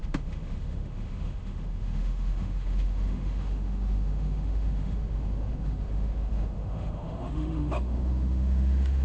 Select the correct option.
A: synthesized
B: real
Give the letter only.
A